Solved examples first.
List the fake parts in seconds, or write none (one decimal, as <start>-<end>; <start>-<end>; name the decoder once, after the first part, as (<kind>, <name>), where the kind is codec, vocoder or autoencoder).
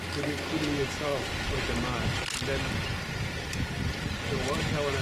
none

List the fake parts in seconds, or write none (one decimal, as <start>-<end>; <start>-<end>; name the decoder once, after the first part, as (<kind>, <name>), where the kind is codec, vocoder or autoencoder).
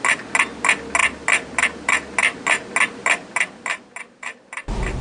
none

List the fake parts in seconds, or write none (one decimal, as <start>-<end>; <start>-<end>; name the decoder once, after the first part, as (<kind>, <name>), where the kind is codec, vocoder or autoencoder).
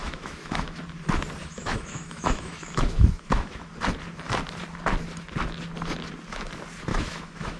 0.0-0.8 (autoencoder, DAC-VAE); 1.4-3.7; 6.9-7.6